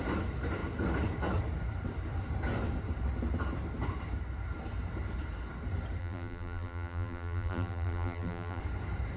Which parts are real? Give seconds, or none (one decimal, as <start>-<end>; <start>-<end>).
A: 0.0-6.0; 8.6-9.2